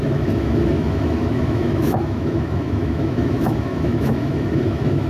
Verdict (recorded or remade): remade